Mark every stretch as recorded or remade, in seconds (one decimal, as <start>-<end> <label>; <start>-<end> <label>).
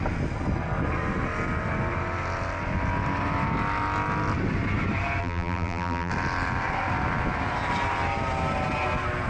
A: 0.0-5.2 recorded; 5.2-6.1 remade; 6.1-9.3 recorded